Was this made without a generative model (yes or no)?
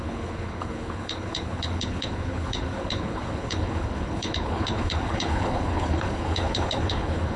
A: no